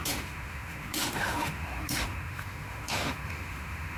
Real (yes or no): no